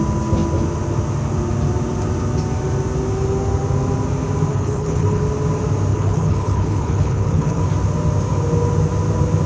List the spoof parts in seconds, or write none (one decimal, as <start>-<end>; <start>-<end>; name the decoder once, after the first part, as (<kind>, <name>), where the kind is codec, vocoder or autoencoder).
4.5-5.2 (codec, HILCodec); 5.9-7.6